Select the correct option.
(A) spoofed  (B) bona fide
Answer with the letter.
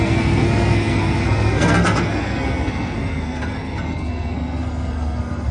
A